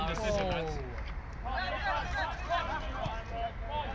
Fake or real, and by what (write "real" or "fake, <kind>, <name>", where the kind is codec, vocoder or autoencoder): real